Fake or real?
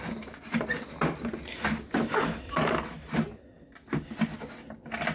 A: real